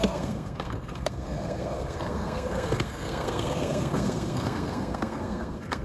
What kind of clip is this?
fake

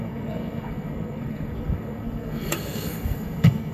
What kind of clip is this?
fake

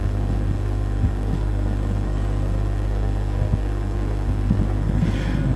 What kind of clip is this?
fake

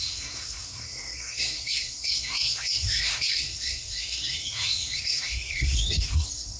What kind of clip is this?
fake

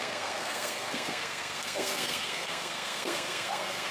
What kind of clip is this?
fake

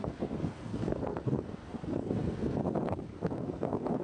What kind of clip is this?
fake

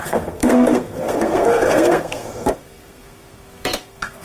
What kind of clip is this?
fake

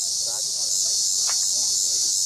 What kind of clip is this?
real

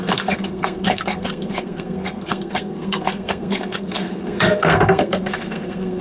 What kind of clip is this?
fake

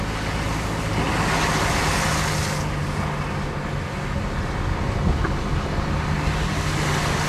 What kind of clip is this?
real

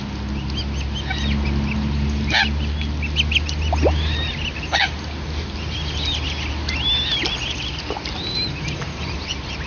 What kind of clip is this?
real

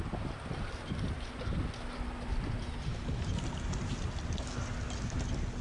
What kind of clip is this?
real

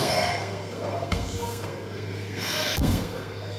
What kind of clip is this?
fake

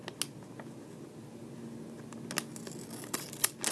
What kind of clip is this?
real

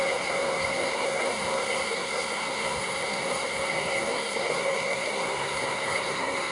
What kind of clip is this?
fake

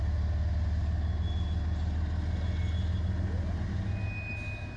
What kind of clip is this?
real